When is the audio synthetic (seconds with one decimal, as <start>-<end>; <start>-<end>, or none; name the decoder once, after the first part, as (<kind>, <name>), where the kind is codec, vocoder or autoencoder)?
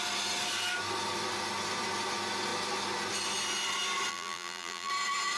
4.1-4.9 (vocoder, BigVGAN v2)